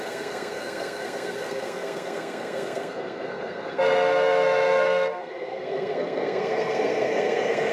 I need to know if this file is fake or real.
fake